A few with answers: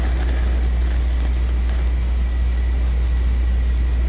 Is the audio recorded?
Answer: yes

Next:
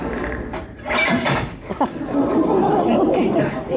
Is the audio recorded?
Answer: no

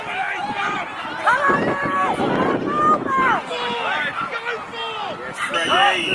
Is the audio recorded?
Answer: yes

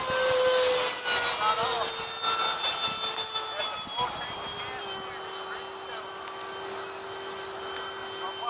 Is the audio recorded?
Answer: yes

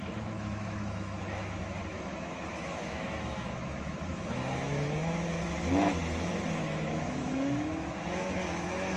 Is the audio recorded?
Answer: no